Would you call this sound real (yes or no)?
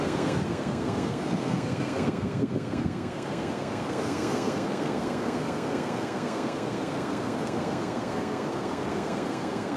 no